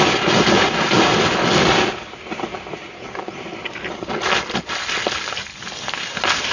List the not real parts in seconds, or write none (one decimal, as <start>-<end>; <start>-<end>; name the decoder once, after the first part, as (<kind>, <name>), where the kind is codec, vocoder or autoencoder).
none